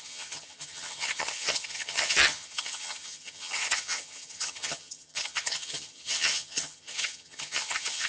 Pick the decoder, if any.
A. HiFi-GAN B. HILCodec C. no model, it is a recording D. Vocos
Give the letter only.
A